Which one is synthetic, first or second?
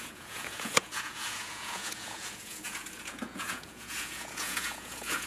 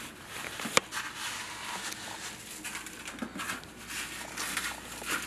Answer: first